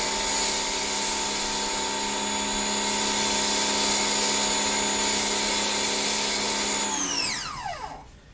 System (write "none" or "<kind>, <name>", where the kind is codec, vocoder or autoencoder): none